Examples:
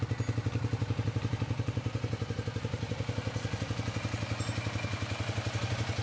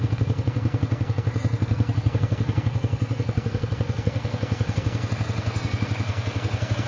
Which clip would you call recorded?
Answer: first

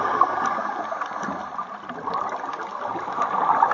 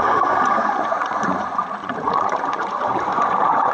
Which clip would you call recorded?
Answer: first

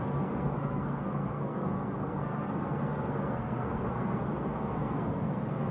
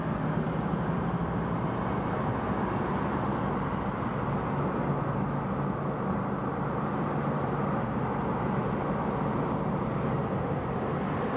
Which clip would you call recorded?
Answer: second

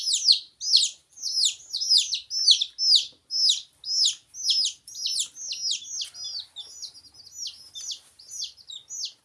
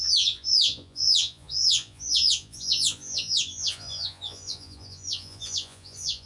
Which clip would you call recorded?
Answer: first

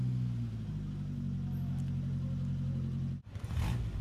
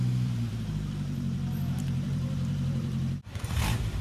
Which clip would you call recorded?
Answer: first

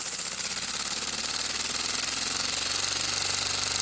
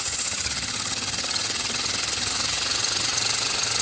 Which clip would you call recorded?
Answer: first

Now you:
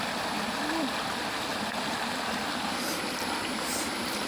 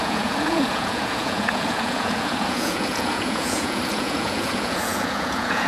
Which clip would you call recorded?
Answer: first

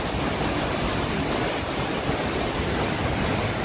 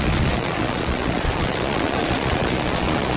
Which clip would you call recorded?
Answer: first